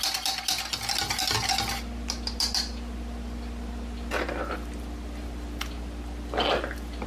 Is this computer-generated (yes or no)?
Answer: no